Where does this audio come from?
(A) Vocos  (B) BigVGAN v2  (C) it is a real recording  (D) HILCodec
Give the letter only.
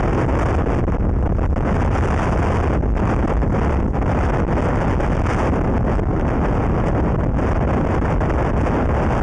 C